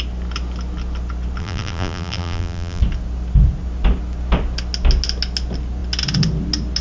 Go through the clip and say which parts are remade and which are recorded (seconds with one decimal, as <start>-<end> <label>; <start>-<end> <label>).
0.0-1.4 recorded; 1.4-2.8 remade; 2.8-6.8 recorded